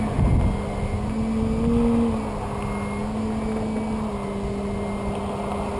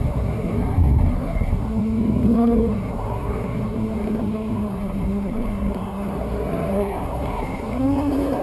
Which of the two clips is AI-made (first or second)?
second